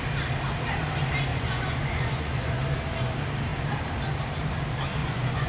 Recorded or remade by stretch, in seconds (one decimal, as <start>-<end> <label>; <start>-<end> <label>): 0.0-1.3 recorded; 1.3-2.6 remade; 2.6-5.0 recorded; 5.0-5.5 remade